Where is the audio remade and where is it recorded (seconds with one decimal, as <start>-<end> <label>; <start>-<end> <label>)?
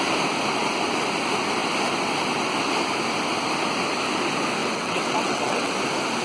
0.0-4.6 recorded; 4.6-5.7 remade; 5.7-6.2 recorded